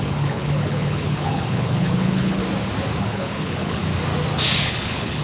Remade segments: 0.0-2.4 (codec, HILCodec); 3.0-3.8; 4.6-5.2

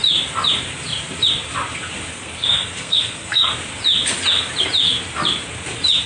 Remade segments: 2.1-3.5 (codec, SNAC)